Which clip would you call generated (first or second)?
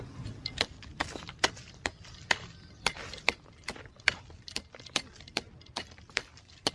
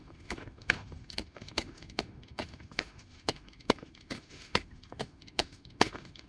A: second